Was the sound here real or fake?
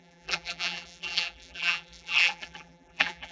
fake